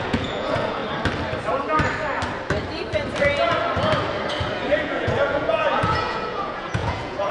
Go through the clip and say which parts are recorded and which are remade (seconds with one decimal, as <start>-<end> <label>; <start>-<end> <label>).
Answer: 0.0-0.8 remade; 0.8-4.8 recorded; 4.8-7.3 remade